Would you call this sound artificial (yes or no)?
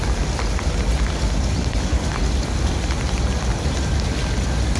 no